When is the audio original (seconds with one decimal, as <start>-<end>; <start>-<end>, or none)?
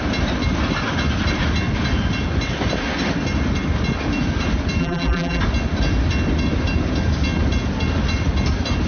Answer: 0.0-4.8; 5.4-8.9